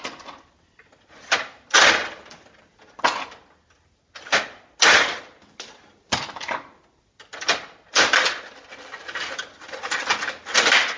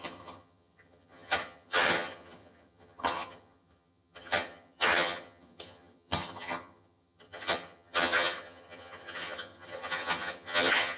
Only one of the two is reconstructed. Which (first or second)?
second